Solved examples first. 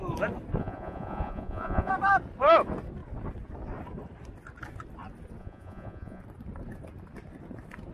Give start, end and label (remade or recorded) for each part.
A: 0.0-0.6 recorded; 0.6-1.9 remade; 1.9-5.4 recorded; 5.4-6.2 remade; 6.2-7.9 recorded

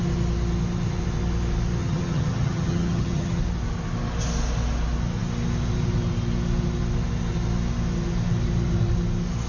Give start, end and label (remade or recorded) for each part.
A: 0.0-1.8 recorded; 1.8-3.4 remade; 3.4-9.5 recorded

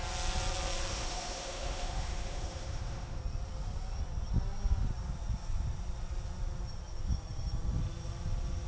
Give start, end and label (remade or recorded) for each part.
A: 0.0-0.9 recorded; 0.9-3.2 remade; 3.2-8.7 recorded